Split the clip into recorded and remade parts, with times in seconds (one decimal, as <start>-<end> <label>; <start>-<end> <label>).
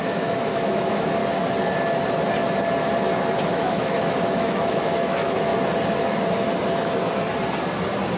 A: 0.0-1.2 remade; 1.2-3.5 recorded; 3.5-5.5 remade; 5.5-8.2 recorded